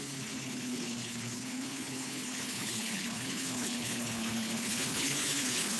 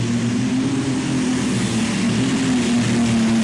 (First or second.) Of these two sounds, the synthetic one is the first